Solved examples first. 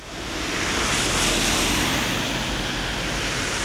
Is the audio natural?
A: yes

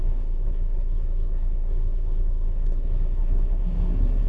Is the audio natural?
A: no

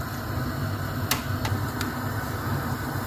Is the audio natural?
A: yes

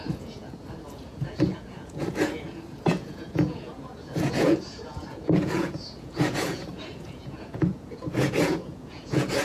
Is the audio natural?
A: no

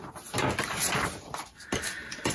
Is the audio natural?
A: yes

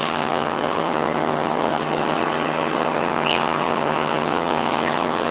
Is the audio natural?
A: no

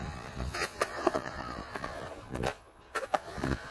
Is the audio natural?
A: no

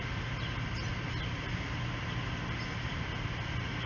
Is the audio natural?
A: yes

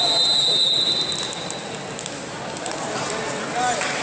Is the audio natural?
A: yes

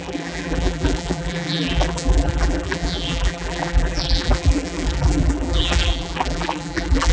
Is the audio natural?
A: no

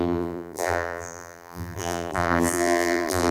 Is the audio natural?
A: no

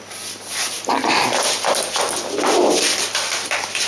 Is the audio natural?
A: yes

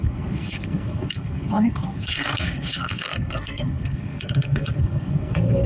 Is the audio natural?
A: no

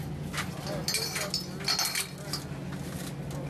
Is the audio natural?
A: yes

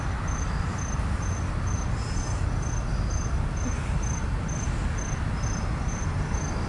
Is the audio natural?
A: yes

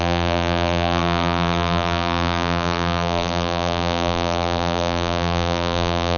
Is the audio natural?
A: no